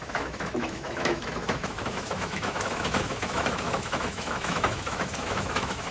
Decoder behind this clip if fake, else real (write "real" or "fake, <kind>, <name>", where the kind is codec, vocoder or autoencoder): fake, autoencoder, DAC-VAE